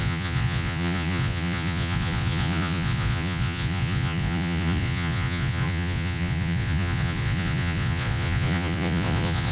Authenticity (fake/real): fake